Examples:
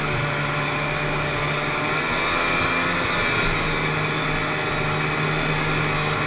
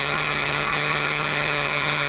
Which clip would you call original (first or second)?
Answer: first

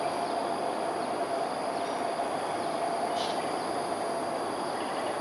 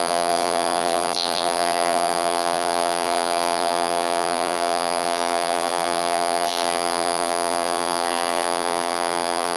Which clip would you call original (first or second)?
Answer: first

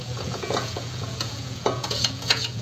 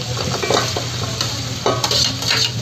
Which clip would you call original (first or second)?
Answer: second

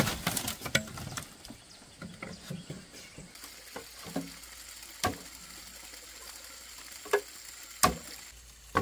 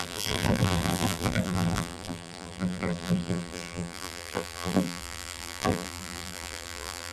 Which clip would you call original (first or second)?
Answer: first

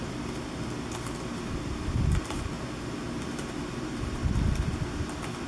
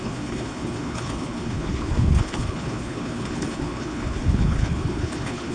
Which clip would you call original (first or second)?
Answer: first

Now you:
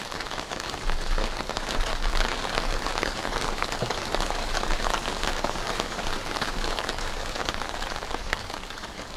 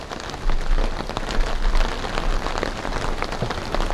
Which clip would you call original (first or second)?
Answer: second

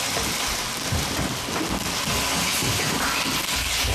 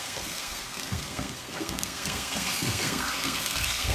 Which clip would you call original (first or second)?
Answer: first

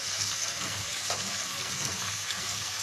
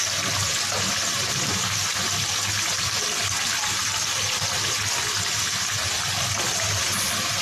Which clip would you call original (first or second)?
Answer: second